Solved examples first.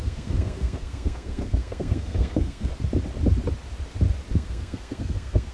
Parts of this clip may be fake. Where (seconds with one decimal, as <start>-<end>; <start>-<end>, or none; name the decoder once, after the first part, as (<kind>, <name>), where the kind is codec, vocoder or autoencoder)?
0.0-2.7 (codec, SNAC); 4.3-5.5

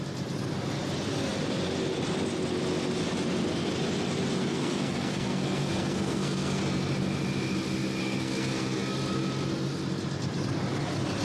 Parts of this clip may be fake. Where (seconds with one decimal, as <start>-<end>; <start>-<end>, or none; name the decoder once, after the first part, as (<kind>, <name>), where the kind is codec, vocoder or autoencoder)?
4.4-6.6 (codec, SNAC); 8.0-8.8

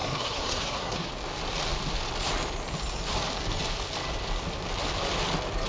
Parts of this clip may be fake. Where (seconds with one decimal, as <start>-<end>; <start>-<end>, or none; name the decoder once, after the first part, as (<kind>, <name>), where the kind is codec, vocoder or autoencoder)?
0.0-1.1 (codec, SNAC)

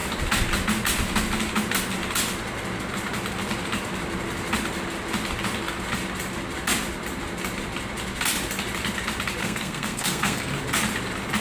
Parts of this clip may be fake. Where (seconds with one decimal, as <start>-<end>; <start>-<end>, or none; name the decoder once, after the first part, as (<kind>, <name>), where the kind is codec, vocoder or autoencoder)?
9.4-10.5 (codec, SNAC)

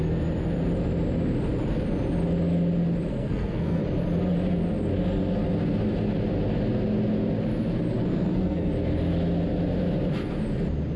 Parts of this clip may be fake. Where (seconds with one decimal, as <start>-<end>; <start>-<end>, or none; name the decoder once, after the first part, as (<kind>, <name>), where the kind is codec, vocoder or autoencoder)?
3.1-3.8 (codec, SNAC); 8.0-8.7

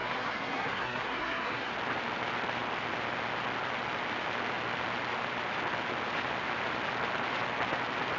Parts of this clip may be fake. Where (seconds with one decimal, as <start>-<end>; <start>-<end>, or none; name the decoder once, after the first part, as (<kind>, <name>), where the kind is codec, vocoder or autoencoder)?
0.0-1.7 (codec, SNAC)